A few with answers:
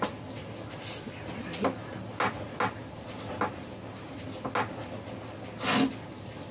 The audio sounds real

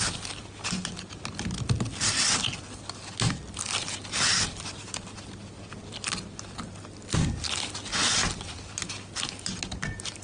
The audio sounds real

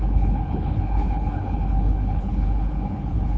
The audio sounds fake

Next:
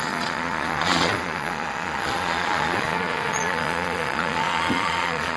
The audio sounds fake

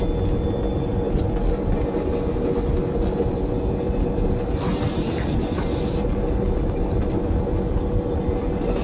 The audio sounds real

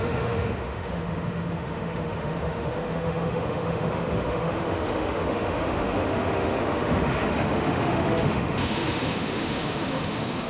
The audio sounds fake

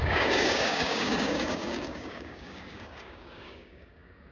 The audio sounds fake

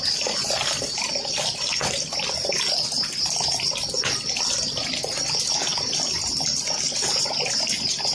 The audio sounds real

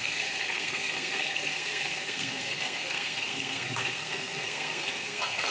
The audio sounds fake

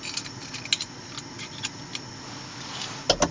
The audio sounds real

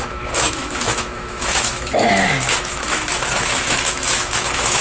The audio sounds fake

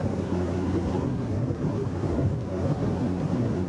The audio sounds fake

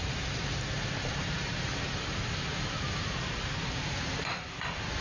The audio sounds fake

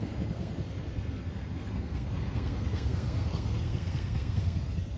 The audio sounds fake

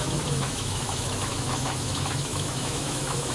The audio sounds fake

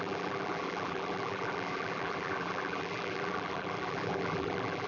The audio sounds fake